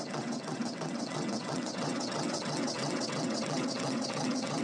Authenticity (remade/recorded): remade